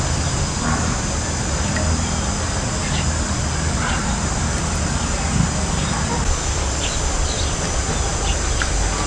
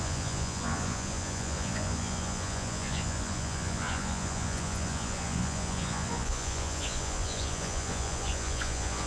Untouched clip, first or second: first